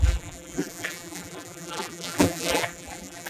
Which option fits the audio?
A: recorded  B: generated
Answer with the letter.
B